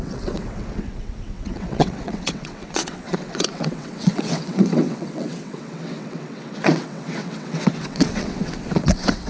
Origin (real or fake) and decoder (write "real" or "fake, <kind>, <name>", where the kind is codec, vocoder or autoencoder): fake, vocoder, WaveNeXt